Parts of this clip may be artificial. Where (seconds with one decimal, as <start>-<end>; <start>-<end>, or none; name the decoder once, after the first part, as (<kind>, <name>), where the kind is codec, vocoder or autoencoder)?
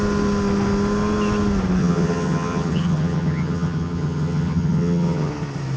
1.8-5.3 (vocoder, HiFi-GAN)